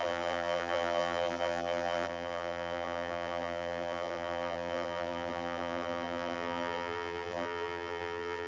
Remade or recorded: remade